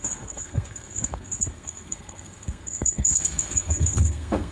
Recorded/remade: remade